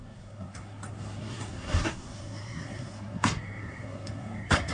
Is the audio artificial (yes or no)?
yes